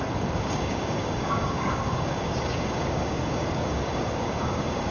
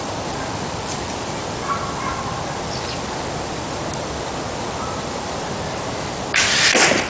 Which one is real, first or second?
second